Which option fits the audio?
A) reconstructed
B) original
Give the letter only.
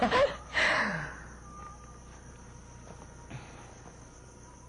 B